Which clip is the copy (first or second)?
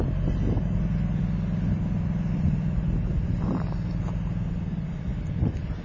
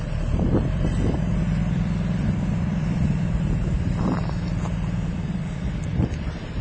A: second